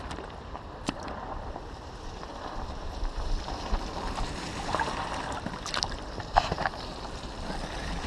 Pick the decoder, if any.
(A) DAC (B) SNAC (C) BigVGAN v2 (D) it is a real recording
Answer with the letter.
C